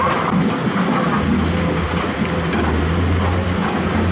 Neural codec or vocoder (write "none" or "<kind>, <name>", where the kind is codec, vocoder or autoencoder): none